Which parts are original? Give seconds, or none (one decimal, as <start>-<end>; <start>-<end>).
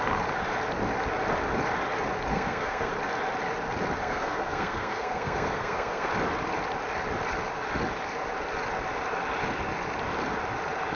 0.0-2.3; 2.9-4.0; 6.1-11.0